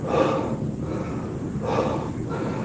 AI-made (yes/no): no